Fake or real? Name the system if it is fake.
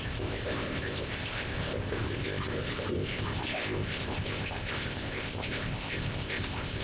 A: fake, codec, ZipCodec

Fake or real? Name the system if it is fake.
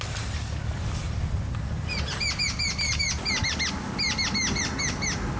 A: real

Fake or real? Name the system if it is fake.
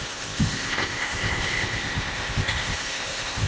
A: fake, codec, ZipCodec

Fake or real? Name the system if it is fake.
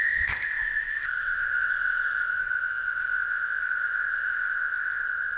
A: fake, codec, ZipCodec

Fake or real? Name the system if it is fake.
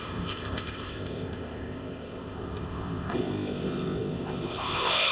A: fake, codec, ZipCodec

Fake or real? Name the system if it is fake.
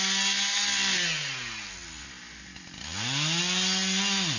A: real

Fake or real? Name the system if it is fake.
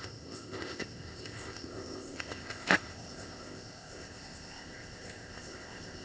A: fake, codec, ZipCodec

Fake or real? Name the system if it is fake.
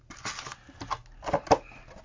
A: real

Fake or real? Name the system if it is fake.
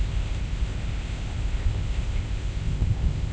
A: fake, codec, ZipCodec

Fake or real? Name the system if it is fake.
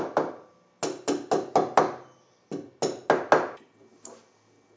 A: real